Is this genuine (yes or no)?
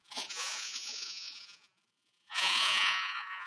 no